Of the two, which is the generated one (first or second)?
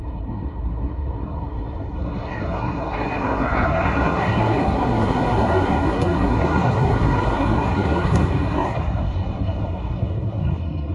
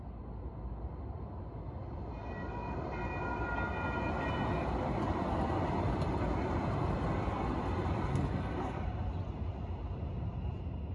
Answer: first